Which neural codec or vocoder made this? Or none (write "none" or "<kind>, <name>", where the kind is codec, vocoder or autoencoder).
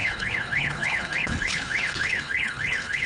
codec, HILCodec